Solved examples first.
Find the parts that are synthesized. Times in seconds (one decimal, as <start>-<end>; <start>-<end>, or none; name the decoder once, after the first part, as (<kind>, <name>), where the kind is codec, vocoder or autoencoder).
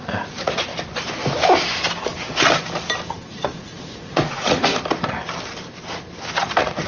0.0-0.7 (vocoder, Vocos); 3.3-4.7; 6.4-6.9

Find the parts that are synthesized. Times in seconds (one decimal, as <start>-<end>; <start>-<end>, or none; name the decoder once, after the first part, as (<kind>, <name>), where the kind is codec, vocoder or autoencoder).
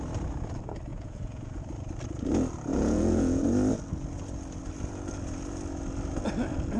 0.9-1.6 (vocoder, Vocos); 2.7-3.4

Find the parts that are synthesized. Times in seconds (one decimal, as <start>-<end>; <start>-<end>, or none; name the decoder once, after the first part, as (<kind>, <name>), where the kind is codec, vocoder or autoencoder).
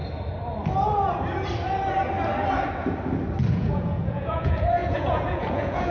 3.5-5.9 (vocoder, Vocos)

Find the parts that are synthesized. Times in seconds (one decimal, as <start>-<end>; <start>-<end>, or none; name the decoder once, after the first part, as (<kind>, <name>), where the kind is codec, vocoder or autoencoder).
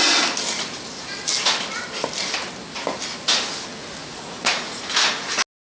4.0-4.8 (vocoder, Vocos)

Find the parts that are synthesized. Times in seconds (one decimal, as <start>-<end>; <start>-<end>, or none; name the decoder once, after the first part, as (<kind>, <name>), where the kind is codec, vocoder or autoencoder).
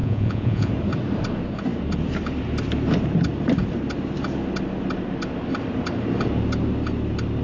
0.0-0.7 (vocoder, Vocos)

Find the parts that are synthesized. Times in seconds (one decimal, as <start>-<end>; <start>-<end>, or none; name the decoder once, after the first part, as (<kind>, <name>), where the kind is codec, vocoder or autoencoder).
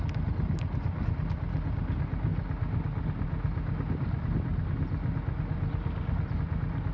none